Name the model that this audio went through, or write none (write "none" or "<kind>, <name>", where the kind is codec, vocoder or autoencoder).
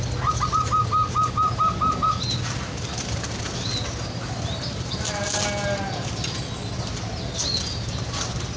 none